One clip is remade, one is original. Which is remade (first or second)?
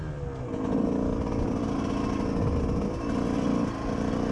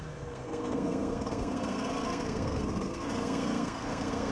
second